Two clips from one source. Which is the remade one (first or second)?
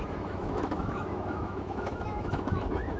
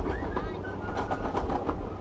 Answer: first